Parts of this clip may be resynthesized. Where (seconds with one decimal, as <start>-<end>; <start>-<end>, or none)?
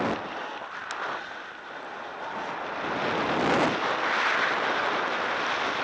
none